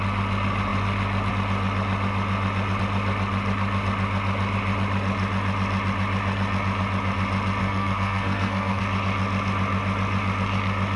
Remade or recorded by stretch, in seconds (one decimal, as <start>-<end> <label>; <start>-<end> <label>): 0.0-7.6 recorded; 7.6-8.8 remade; 8.8-11.0 recorded